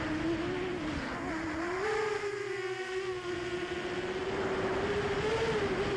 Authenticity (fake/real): real